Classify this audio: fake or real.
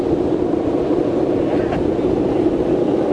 real